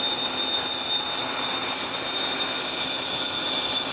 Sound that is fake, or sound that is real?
real